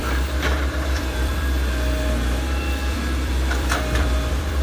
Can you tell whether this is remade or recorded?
remade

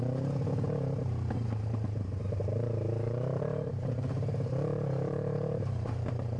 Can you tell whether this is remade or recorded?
remade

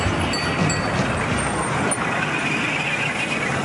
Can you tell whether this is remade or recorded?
recorded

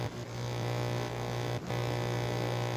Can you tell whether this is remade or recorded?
recorded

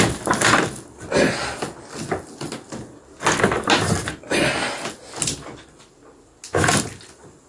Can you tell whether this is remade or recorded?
recorded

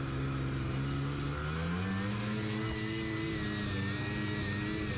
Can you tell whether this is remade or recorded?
recorded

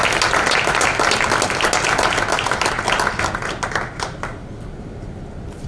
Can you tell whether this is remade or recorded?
recorded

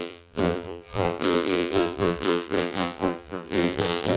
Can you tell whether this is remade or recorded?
remade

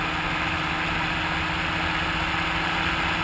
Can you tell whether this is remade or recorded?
recorded